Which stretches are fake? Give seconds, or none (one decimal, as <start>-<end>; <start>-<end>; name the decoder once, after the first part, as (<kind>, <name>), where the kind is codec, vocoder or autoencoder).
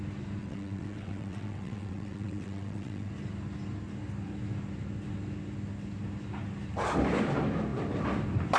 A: 0.4-3.1 (vocoder, WaveNeXt)